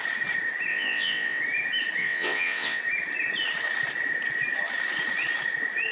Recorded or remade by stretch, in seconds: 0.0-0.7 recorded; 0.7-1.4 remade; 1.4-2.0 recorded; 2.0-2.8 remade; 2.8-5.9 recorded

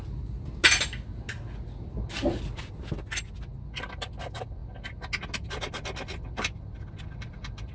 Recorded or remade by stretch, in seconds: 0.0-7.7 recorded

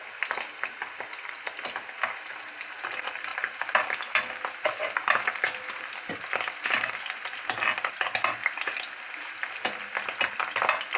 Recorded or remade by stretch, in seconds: 0.0-11.0 recorded

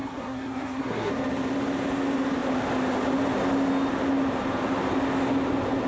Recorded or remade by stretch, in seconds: 0.0-1.1 remade; 1.1-5.9 recorded